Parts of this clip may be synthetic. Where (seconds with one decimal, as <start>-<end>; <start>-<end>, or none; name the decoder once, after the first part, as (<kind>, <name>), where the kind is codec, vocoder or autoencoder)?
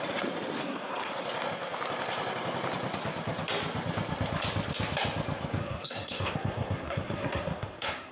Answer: 0.6-1.1 (codec, SNAC); 5.6-8.1